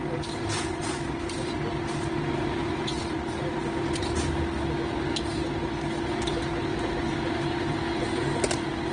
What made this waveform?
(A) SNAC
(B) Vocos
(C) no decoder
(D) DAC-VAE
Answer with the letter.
C